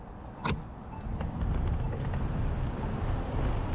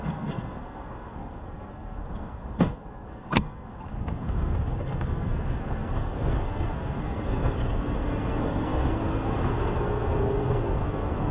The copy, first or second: second